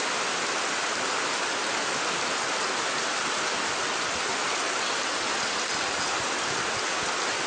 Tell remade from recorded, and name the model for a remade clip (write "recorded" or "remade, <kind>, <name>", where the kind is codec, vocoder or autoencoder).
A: recorded